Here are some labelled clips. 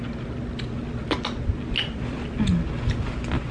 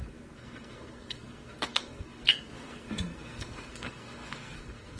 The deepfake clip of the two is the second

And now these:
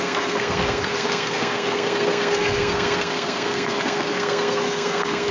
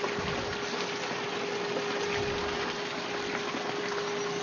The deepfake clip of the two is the first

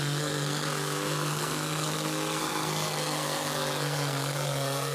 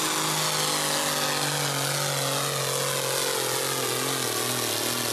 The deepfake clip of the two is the first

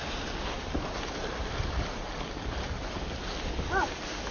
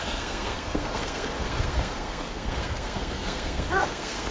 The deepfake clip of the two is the second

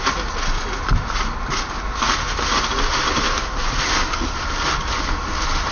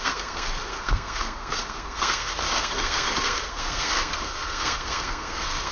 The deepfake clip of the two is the second